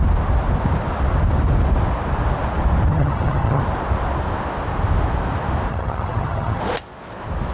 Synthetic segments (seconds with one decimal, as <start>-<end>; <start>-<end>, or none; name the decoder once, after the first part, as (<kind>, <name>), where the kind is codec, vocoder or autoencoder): 2.9-3.6 (vocoder, HiFi-GAN); 5.7-6.6